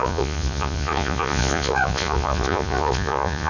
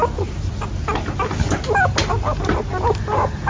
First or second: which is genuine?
second